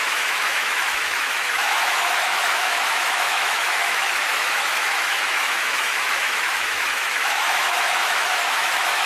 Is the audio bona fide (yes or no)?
no